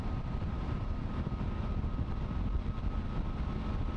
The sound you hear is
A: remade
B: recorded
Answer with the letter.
B